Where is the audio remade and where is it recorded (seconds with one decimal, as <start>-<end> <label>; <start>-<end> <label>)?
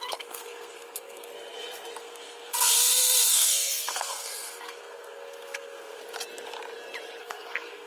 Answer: 0.0-1.3 remade; 1.3-2.0 recorded; 2.0-6.0 remade; 6.0-7.2 recorded; 7.2-7.9 remade